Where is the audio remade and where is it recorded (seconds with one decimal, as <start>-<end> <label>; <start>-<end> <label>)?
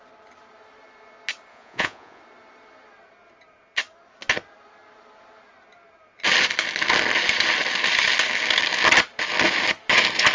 0.0-1.5 recorded; 1.5-2.2 remade; 2.2-10.3 recorded